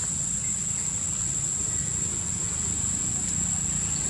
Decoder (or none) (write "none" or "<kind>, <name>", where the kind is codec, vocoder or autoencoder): none